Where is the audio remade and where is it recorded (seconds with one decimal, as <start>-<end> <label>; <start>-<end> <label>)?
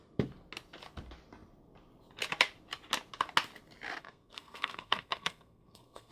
0.0-4.0 recorded; 4.0-6.1 remade